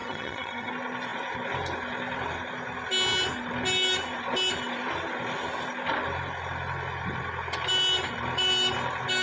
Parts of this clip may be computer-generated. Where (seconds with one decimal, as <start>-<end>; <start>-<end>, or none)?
0.0-0.7